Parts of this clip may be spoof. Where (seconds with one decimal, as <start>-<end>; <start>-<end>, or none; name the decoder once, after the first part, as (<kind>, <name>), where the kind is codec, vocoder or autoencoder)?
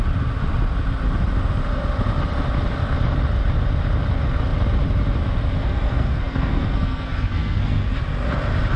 5.6-7.9 (codec, SNAC)